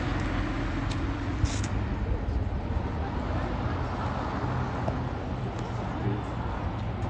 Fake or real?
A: real